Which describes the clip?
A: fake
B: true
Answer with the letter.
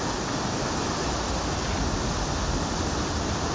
B